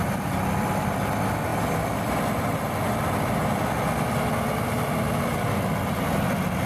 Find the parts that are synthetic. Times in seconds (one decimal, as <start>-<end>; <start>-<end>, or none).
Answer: none